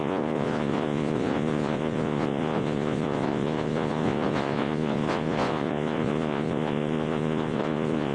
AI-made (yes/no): yes